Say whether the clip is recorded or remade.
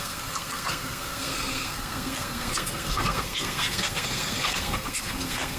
remade